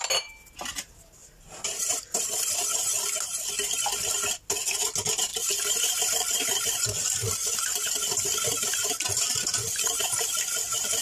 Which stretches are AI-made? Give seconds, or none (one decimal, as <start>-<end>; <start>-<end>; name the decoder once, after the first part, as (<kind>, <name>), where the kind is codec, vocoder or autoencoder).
1.2-2.1 (vocoder, BigVGAN v2); 5.3-6.1